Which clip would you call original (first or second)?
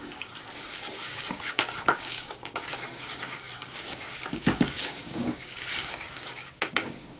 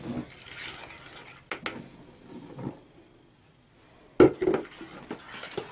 second